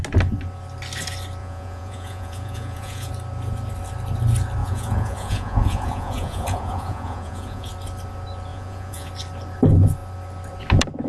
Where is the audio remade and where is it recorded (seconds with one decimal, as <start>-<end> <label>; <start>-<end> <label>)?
0.0-1.4 recorded; 1.4-3.1 remade; 3.1-4.6 recorded; 4.6-7.7 remade; 7.7-8.5 recorded; 8.5-9.1 remade; 9.1-11.1 recorded